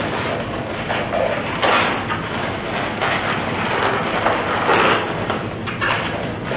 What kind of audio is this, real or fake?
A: real